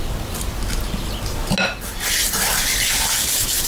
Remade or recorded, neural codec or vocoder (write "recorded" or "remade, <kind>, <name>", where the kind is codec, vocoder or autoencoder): recorded